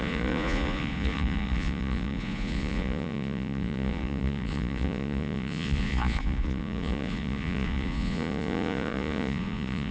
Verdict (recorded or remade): remade